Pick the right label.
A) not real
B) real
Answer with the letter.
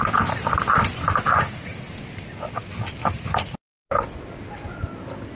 B